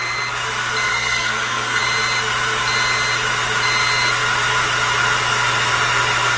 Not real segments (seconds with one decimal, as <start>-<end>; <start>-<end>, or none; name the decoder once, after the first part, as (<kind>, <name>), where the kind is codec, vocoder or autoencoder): 0.9-1.8 (codec, SNAC)

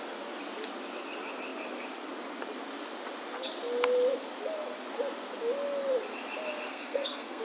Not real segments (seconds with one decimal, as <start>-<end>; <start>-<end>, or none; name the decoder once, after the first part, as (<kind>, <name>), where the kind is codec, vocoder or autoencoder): 6.7-7.4 (codec, SNAC)

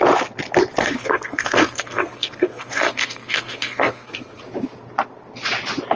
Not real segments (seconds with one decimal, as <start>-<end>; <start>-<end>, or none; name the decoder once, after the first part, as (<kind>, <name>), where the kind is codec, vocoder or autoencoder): 0.8-4.4 (codec, SNAC)

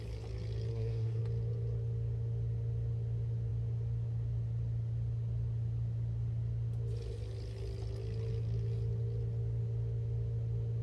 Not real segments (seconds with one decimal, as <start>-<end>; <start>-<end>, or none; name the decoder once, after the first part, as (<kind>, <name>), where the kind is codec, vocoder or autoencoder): 0.7-1.2 (codec, SNAC)